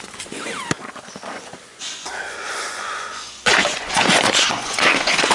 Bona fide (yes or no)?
no